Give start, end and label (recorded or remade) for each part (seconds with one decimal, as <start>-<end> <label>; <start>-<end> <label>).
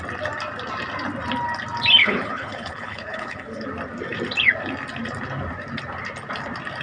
0.0-2.0 recorded; 2.0-3.6 remade; 3.6-6.8 recorded